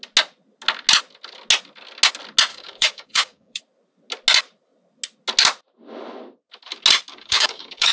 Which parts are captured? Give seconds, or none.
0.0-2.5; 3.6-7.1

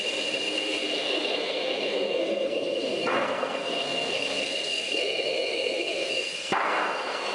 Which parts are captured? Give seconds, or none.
none

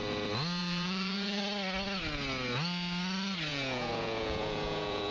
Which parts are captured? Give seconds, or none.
0.0-0.6; 1.4-3.5

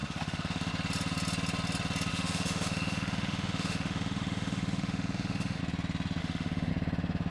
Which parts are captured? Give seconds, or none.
0.7-2.1; 5.6-6.2; 6.7-7.3